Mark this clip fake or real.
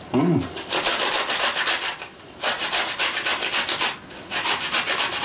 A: real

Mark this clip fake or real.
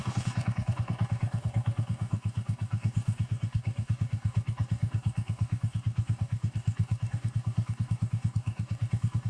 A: fake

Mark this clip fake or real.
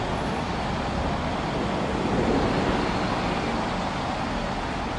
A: real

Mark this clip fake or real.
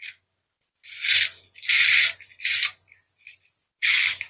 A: real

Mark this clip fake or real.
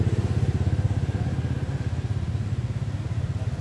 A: real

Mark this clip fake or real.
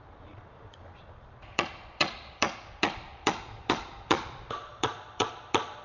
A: fake